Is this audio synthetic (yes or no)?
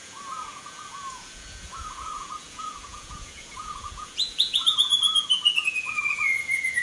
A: yes